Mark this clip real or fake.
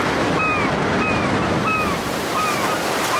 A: real